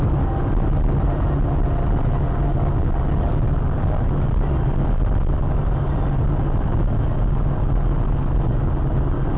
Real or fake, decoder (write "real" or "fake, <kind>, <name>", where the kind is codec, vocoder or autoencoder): real